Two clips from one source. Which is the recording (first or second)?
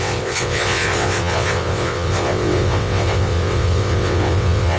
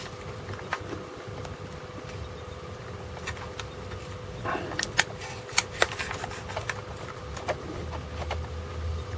second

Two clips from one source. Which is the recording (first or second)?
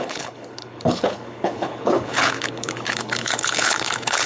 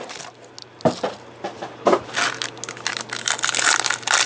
second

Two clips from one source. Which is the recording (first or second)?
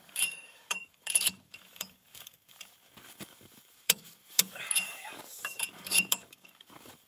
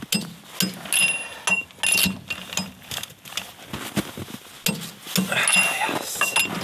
second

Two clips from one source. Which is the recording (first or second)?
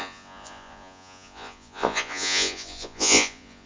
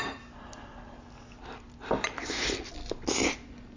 second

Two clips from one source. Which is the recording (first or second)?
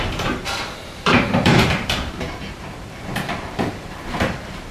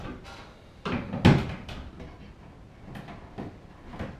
second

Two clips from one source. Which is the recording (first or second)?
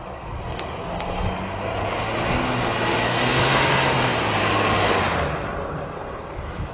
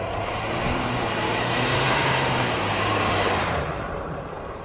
first